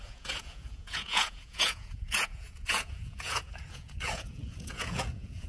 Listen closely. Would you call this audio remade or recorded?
remade